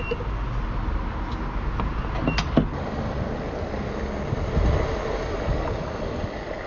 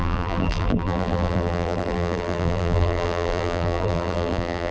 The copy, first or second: second